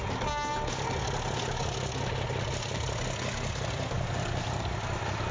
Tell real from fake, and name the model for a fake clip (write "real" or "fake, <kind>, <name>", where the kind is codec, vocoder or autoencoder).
real